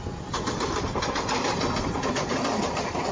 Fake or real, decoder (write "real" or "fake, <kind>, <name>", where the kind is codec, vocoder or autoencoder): real